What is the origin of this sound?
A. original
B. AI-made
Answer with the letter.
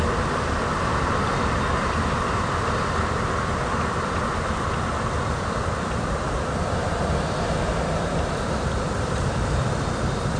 B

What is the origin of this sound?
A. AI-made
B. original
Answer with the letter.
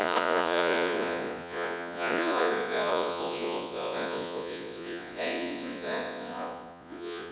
A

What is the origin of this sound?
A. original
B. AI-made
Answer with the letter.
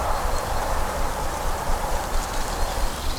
B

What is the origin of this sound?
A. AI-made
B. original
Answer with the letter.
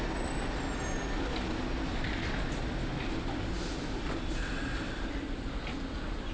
B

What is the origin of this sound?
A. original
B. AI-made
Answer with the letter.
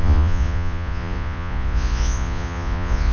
B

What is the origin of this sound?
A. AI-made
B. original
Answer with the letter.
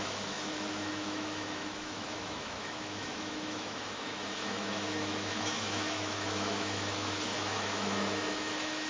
A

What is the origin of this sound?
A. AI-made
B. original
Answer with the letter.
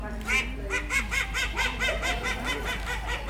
B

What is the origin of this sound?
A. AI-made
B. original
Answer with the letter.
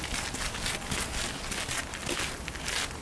B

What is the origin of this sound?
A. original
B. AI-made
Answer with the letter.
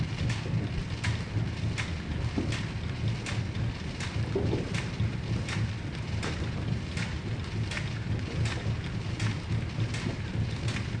A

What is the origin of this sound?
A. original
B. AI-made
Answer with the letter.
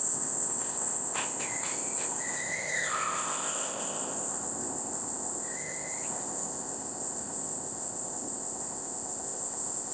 B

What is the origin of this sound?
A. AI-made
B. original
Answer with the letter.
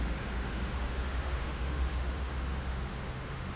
A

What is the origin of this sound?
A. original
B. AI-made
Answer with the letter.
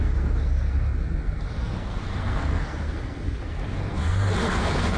B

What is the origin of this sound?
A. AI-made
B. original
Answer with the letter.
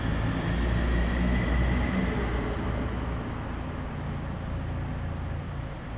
B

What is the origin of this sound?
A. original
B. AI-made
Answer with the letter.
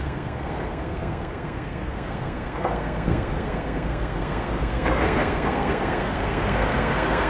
B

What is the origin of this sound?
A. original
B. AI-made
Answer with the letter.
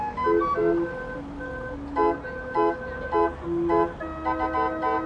A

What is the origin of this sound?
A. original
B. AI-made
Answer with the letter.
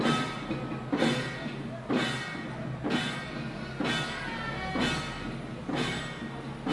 A